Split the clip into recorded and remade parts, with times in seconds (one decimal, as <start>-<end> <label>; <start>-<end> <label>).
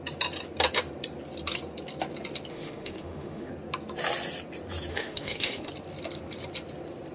0.0-2.5 recorded; 2.5-3.5 remade; 3.5-4.9 recorded; 4.9-5.7 remade; 5.7-7.1 recorded